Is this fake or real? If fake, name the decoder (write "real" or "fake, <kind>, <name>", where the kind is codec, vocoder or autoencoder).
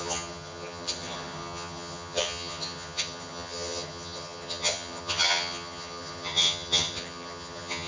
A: fake, vocoder, HiFi-GAN